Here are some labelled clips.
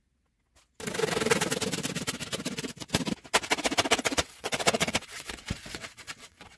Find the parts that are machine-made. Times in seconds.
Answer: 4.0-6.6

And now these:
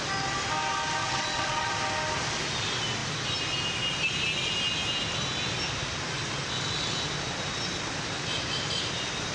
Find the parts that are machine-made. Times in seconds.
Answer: 1.0-1.7

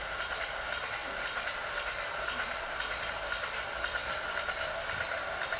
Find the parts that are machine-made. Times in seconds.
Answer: none

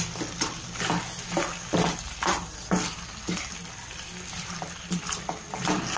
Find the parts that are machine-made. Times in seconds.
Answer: none

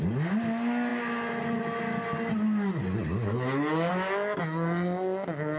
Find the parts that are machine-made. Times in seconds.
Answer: none

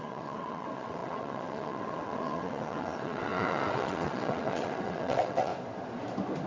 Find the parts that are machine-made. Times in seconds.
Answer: 0.0-5.5

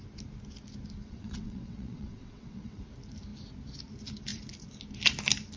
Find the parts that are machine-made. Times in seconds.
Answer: 1.0-2.8